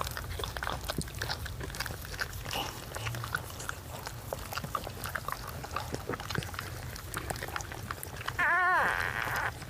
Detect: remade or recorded recorded